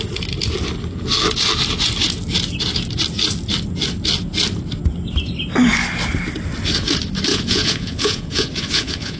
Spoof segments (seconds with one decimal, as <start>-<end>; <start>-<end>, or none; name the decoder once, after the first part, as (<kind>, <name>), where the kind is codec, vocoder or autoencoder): 7.3-9.2 (vocoder, Vocos)